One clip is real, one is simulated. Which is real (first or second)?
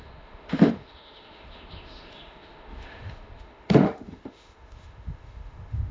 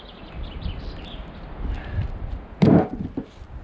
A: second